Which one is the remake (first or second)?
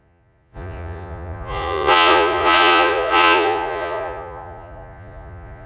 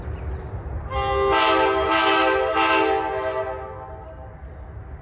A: first